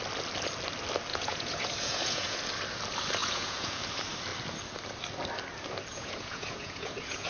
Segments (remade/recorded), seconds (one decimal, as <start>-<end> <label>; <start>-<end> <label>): 0.0-1.1 recorded; 1.1-2.4 remade; 2.4-3.2 recorded; 3.2-3.8 remade; 3.8-5.9 recorded; 5.9-7.3 remade